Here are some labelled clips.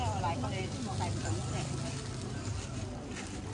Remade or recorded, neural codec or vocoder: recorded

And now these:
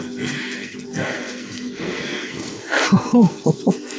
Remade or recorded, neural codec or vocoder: remade, codec, SNAC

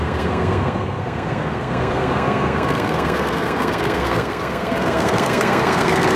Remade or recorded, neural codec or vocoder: remade, codec, SNAC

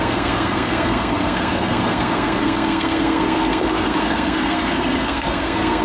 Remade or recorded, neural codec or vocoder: remade, codec, SNAC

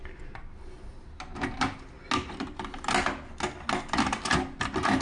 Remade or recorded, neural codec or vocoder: recorded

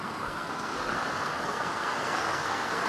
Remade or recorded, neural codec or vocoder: remade, codec, SNAC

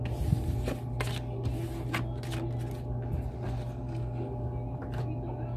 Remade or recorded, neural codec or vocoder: recorded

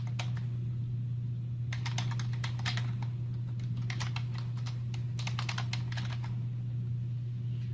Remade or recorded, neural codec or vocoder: recorded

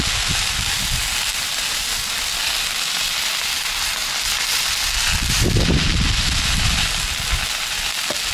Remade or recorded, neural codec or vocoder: recorded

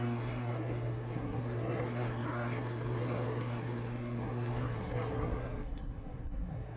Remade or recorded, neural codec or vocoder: remade, codec, SNAC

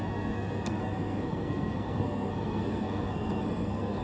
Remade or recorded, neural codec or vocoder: remade, codec, SNAC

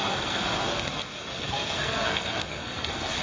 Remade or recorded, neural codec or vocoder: remade, codec, SNAC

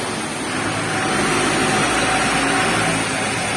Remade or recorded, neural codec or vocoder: recorded